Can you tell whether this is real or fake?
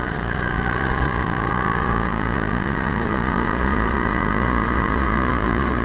fake